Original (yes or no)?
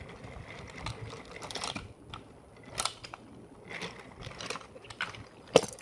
yes